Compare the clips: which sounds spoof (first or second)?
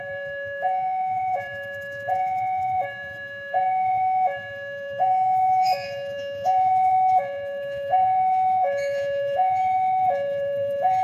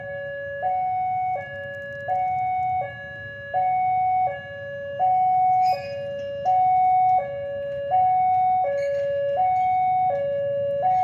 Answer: first